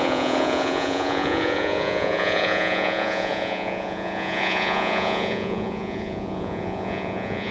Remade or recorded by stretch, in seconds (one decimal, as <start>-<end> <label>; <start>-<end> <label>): 0.0-7.5 remade